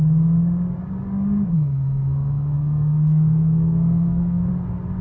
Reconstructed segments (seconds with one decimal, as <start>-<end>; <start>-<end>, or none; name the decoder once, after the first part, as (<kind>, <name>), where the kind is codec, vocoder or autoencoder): 1.5-4.5 (codec, SNAC)